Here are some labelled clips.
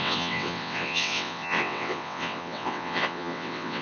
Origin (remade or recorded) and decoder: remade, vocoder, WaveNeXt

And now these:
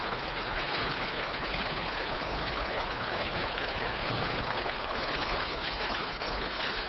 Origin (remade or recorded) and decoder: remade, codec, HILCodec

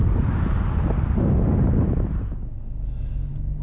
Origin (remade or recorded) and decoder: recorded